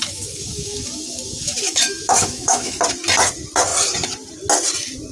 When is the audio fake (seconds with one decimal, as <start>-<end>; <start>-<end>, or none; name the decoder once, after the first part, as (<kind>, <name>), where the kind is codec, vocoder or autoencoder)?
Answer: 0.0-2.8 (autoencoder, DAC-VAE)